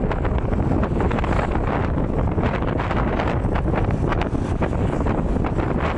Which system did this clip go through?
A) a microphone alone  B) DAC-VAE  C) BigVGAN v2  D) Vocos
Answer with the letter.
A